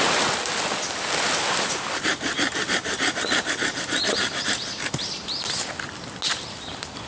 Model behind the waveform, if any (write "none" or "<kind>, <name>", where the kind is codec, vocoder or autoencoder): none